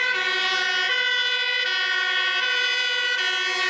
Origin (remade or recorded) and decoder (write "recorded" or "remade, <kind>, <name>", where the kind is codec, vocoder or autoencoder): recorded